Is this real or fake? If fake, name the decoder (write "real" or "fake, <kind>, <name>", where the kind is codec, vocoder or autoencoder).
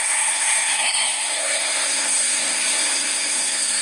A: fake, codec, SNAC